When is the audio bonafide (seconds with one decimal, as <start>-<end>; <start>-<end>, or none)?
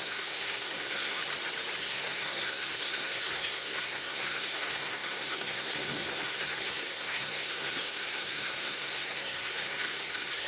1.2-1.8